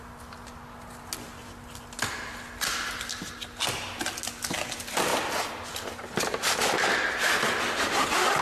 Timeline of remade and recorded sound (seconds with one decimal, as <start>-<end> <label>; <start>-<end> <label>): 0.0-5.1 recorded; 5.1-6.0 remade; 6.0-8.4 recorded